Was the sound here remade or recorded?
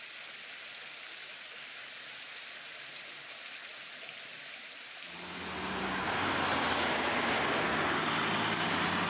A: recorded